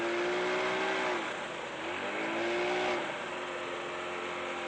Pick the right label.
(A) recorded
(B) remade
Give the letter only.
A